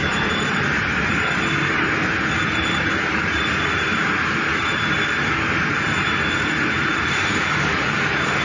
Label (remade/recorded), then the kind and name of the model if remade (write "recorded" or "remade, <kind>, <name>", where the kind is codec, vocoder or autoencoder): remade, vocoder, BigVGAN v2